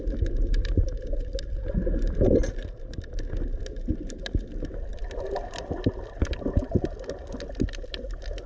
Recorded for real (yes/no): yes